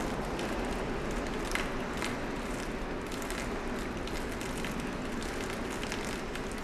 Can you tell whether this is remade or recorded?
recorded